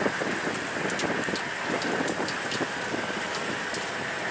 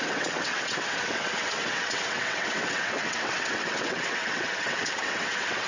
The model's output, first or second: second